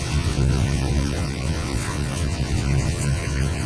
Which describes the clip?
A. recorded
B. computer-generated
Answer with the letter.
B